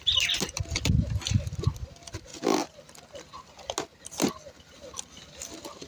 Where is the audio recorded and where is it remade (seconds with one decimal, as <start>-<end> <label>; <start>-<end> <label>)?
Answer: 0.0-5.9 recorded